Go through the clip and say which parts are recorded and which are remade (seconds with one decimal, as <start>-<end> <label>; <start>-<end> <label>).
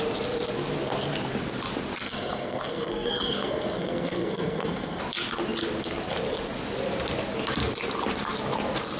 0.0-2.0 recorded; 2.0-5.0 remade; 5.0-9.0 recorded